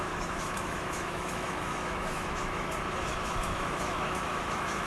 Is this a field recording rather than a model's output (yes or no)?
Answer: no